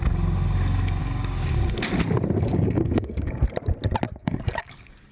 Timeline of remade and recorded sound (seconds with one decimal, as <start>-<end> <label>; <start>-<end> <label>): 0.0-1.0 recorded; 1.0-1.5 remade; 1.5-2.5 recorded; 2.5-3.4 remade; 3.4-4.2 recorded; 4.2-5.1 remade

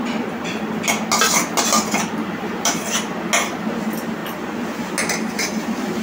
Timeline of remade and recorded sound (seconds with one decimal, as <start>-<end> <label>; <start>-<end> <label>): 0.0-6.0 recorded

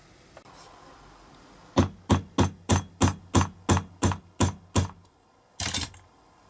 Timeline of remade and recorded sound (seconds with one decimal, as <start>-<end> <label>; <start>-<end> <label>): 0.0-6.5 recorded

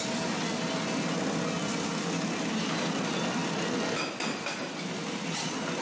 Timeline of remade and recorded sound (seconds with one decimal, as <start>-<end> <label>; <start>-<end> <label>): 0.0-5.8 recorded

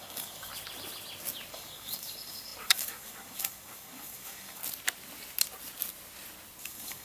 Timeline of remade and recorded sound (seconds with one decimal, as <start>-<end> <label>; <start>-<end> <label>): 0.0-0.5 remade; 0.5-1.5 recorded; 1.5-4.6 remade; 4.6-6.6 recorded; 6.6-7.0 remade

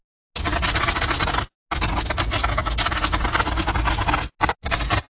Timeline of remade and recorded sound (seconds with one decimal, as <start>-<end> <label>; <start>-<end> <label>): 0.0-5.1 recorded